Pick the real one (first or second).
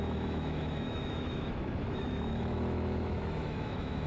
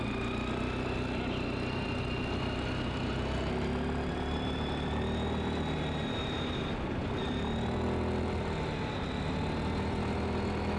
second